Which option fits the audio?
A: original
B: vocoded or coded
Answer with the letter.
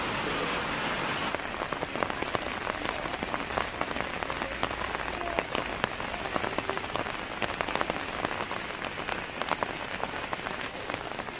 A